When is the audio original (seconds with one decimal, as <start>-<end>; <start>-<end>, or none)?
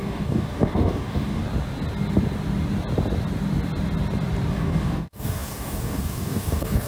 1.4-4.5